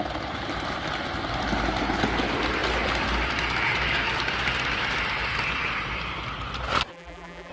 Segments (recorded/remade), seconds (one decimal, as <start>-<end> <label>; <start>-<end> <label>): 0.0-6.9 recorded; 6.9-7.5 remade